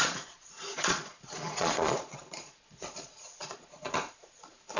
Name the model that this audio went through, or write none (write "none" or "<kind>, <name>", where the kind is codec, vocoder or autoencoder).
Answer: vocoder, Vocos